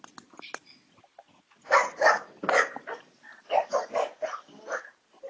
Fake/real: real